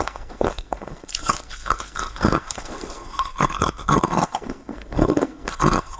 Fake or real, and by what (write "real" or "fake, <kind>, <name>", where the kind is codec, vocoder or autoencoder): fake, codec, SNAC